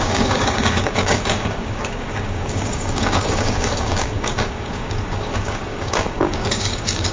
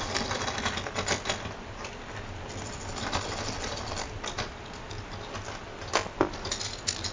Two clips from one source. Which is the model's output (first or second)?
first